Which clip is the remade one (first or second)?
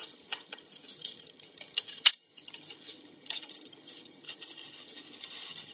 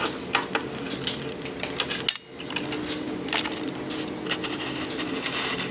first